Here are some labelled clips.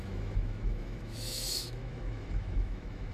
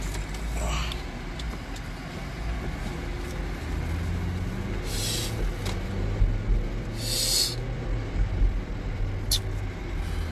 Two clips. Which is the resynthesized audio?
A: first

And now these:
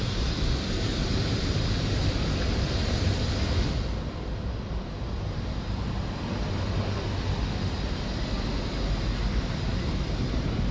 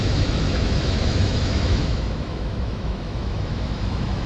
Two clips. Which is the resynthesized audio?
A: second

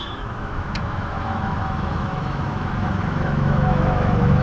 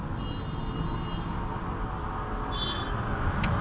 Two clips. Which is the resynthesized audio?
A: first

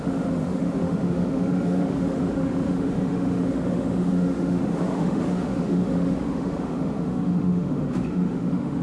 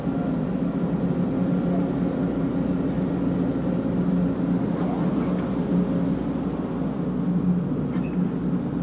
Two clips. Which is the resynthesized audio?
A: first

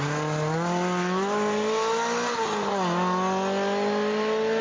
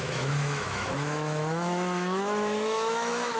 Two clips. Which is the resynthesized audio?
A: second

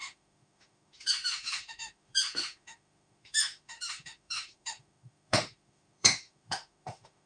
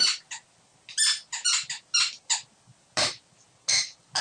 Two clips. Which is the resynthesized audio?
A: first